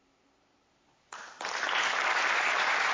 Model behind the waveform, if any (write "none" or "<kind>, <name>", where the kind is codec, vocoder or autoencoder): vocoder, BigVGAN v2